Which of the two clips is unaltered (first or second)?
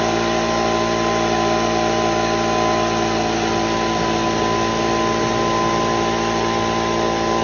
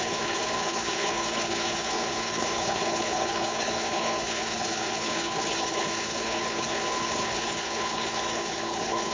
first